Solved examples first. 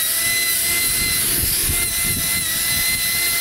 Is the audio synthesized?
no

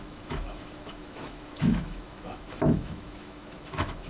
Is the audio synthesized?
yes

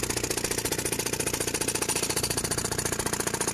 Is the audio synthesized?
no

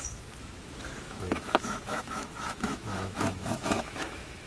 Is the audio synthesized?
yes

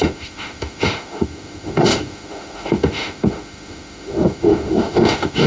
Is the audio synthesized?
yes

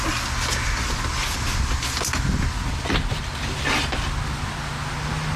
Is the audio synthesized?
no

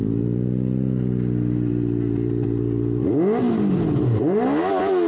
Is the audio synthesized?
no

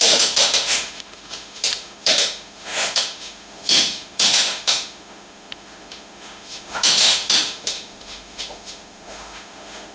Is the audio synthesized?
yes